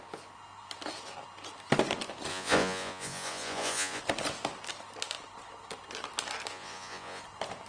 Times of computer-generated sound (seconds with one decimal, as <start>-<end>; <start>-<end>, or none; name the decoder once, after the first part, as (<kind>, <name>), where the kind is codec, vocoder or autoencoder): 2.3-4.0 (vocoder, Vocos); 6.5-7.2